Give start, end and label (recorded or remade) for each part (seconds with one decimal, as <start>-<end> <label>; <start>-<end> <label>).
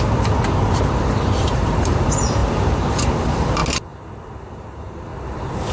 0.0-3.6 remade; 3.6-4.5 recorded; 4.5-5.1 remade; 5.1-5.7 recorded